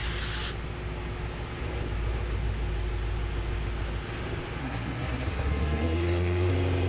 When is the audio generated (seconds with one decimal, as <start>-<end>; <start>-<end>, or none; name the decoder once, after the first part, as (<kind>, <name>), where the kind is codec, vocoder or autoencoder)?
4.6-6.5 (codec, SNAC)